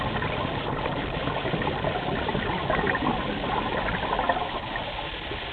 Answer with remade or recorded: recorded